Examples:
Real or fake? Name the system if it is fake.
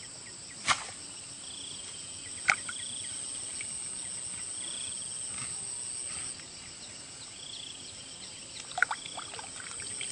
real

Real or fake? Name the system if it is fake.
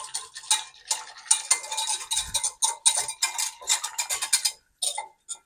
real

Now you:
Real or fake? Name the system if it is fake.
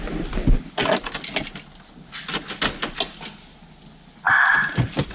real